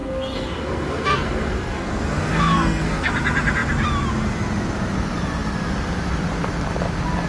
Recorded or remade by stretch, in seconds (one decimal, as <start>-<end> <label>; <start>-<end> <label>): 0.0-1.9 remade; 1.9-2.3 recorded; 2.3-3.1 remade; 3.1-7.3 recorded